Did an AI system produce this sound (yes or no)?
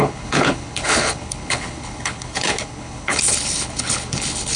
yes